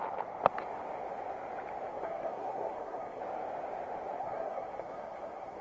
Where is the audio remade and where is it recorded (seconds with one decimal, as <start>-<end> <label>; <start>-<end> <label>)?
0.0-1.9 recorded; 1.9-3.2 remade; 3.2-4.2 recorded; 4.2-5.6 remade